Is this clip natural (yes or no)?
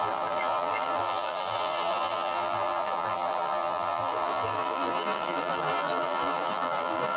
no